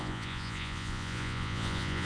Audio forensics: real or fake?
fake